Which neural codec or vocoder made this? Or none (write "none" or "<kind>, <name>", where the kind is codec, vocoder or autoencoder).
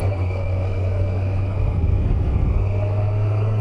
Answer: codec, SNAC